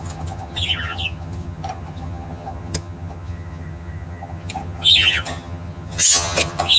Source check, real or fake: fake